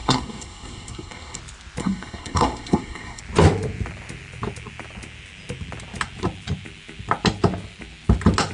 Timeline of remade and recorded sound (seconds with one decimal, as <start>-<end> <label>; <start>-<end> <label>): 0.0-1.4 remade; 1.4-1.8 recorded; 1.8-3.2 remade; 3.2-8.5 recorded